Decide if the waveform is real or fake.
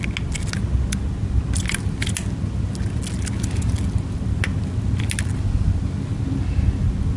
real